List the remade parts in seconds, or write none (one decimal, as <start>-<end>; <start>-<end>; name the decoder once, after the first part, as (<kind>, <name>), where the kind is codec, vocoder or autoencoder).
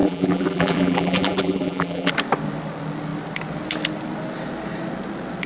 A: 0.0-2.1 (vocoder, BigVGAN v2)